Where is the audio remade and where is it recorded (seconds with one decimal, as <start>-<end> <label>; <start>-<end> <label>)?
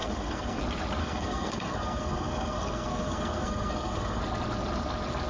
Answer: 0.0-0.6 remade; 0.6-1.0 recorded; 1.0-4.2 remade; 4.2-5.3 recorded